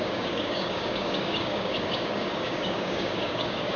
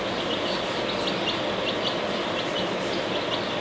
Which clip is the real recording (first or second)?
second